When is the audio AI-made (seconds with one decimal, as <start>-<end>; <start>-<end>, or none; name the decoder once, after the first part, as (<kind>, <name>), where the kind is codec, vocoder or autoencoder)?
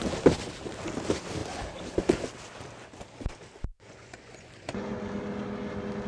3.7-5.0 (vocoder, Vocos)